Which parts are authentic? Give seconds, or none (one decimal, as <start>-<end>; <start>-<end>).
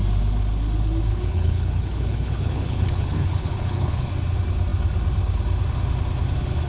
0.0-1.1; 4.1-6.7